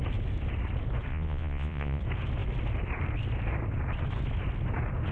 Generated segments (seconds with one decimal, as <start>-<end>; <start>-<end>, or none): 1.1-2.0